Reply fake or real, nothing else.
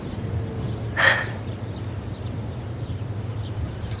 real